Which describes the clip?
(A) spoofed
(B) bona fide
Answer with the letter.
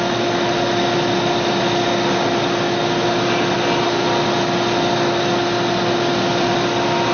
B